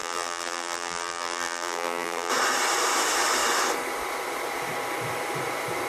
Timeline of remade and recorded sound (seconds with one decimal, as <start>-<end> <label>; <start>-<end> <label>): 0.0-2.3 remade; 2.3-5.9 recorded